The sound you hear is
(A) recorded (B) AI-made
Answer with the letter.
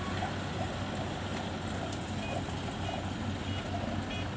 A